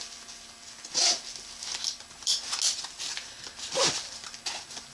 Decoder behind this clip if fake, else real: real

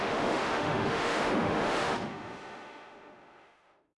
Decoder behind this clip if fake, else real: fake, autoencoder, DAC-VAE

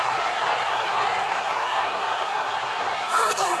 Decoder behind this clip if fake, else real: fake, codec, SNAC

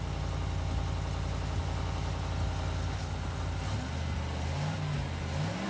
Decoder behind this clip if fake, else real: real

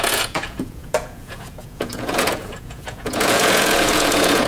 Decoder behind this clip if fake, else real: fake, vocoder, Vocos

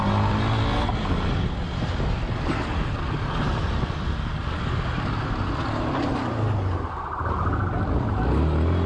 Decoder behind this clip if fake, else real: real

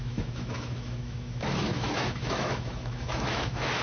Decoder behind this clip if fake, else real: fake, autoencoder, DAC-VAE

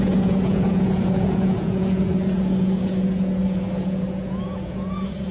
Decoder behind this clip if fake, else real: fake, vocoder, Vocos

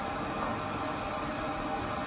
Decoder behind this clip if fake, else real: real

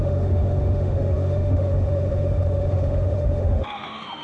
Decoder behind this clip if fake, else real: fake, autoencoder, DAC-VAE